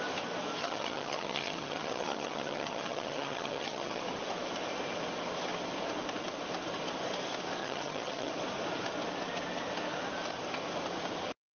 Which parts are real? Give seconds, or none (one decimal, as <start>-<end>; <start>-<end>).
0.0-0.6; 4.0-7.6; 8.3-11.5